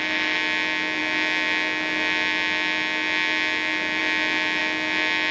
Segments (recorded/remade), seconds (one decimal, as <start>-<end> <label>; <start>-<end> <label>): 0.0-5.3 recorded